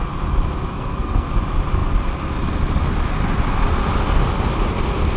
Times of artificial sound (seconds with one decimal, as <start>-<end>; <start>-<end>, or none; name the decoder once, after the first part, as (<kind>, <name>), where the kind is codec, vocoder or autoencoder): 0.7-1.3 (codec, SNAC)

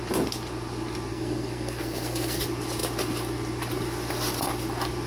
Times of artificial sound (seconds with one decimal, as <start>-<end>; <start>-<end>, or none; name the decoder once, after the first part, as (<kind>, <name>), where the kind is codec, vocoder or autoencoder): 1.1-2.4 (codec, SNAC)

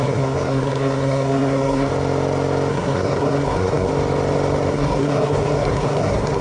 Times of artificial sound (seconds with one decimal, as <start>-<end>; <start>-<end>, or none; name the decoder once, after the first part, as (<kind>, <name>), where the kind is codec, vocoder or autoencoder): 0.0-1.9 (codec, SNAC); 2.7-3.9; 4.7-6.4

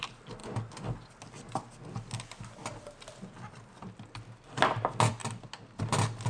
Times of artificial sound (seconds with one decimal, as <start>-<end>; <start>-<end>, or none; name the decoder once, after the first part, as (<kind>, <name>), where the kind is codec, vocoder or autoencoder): none

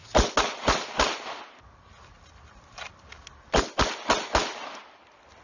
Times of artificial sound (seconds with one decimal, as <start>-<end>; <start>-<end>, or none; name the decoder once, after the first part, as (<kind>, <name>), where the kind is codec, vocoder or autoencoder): none